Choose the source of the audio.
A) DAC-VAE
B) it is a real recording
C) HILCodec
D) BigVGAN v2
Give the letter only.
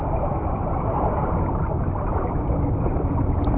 B